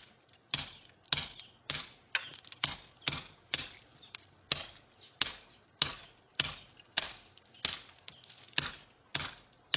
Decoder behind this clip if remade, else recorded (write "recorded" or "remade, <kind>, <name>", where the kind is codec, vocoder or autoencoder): recorded